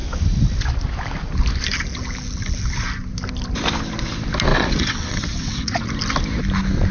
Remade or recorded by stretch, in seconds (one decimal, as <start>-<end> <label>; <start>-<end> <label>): 0.0-4.5 recorded; 4.5-5.9 remade; 5.9-6.9 recorded